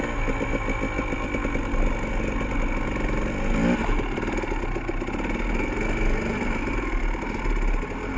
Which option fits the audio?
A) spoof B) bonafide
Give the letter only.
B